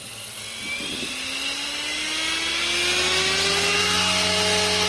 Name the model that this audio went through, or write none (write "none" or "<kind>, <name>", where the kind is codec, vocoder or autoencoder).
none